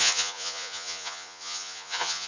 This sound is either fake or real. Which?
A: fake